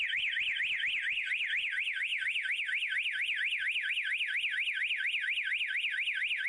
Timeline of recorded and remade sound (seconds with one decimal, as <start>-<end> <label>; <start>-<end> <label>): 0.0-6.5 recorded